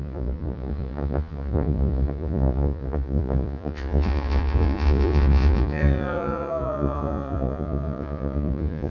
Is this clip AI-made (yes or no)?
yes